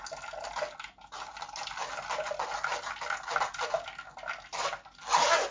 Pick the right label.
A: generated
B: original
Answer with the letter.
B